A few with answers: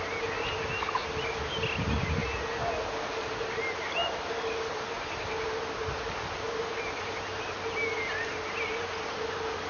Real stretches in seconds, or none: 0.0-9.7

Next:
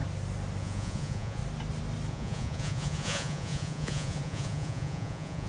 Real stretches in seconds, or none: 0.0-0.6; 1.4-2.1

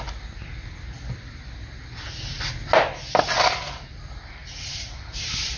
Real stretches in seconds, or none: 0.0-4.4

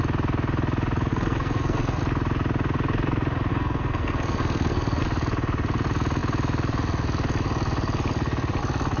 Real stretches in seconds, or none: 0.0-1.1; 2.0-3.5; 5.0-9.0

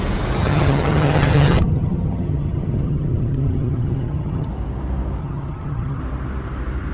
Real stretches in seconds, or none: 0.0-0.4; 4.5-5.2; 6.0-6.9

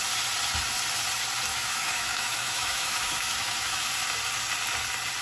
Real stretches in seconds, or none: 0.0-1.5; 3.9-5.2